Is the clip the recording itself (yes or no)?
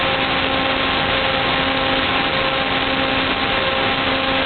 yes